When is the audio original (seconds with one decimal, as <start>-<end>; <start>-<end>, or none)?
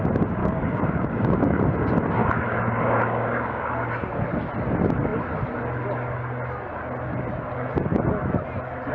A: 0.0-0.4; 1.6-2.2; 3.7-8.9